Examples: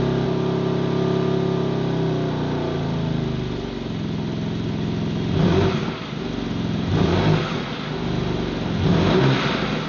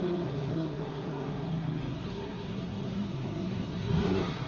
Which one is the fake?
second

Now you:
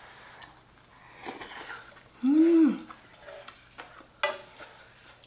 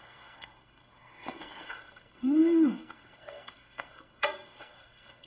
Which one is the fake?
second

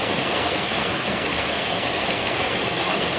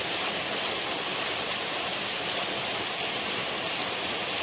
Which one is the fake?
first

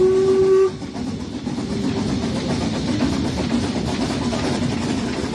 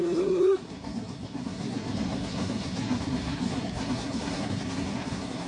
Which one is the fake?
second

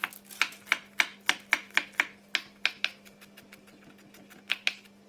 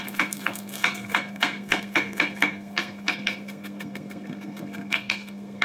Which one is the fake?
second